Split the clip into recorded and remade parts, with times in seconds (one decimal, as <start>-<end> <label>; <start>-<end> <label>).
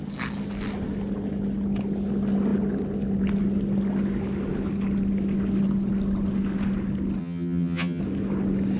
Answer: 0.0-7.2 recorded; 7.2-8.0 remade; 8.0-8.8 recorded